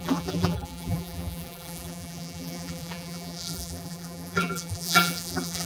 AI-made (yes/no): yes